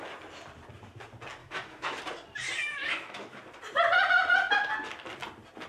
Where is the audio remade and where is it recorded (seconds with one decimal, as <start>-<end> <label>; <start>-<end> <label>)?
0.0-1.4 recorded; 1.4-2.0 remade; 2.0-2.6 recorded; 2.6-3.4 remade; 3.4-5.7 recorded